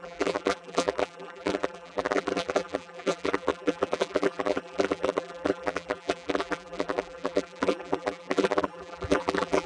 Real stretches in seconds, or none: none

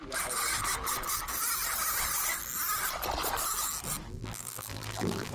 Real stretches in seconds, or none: 0.0-4.1